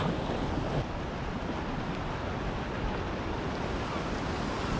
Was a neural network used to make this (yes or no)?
no